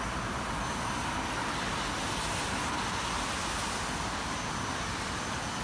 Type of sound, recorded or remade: recorded